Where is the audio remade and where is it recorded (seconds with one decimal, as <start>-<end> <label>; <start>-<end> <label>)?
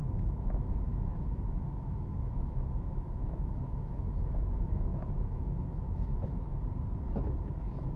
0.0-6.5 remade; 6.5-7.6 recorded; 7.6-8.0 remade